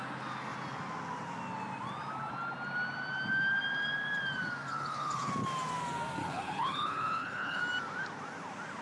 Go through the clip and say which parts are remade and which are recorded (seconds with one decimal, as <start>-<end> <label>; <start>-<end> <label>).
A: 0.0-4.7 recorded; 4.7-5.3 remade; 5.3-6.2 recorded; 6.2-7.6 remade; 7.6-8.8 recorded